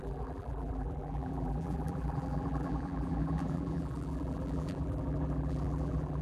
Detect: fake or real fake